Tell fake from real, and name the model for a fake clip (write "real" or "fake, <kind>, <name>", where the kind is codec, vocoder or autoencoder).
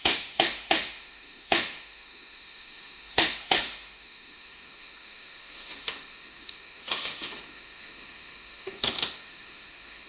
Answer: fake, autoencoder, DAC-VAE